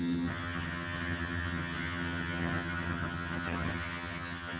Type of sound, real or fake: fake